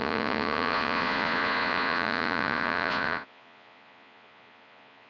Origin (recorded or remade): remade